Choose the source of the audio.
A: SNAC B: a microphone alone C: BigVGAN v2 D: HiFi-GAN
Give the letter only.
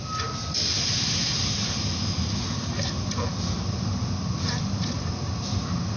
B